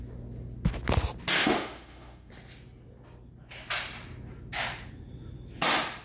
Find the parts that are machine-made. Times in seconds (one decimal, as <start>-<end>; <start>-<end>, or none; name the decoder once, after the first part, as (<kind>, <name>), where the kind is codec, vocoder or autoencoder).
1.4-2.3 (autoencoder, DAC-VAE)